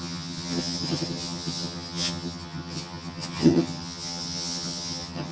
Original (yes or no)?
no